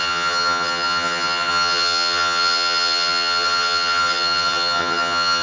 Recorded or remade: remade